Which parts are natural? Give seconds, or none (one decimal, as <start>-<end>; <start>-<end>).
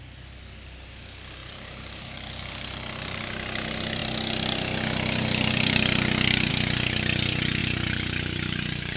0.0-1.4; 3.2-7.6